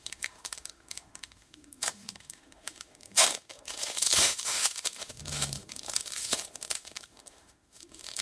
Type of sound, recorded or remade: remade